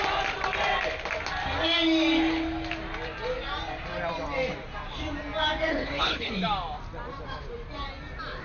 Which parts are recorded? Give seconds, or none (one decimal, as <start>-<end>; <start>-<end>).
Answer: 0.0-5.7; 6.3-8.4